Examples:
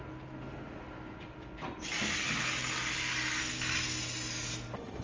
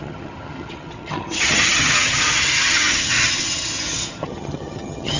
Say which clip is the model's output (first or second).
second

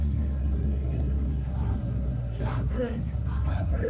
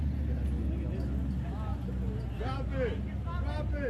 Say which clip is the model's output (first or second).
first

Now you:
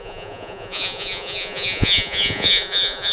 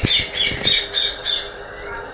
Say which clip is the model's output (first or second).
first